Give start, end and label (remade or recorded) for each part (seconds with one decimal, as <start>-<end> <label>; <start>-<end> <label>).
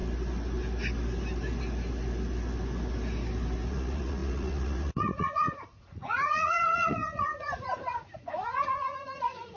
0.0-3.7 recorded; 3.7-9.6 remade